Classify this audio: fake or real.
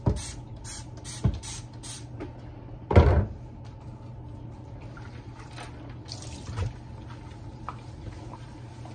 real